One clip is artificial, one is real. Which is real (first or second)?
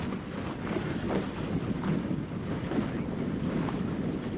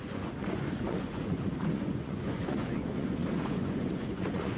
first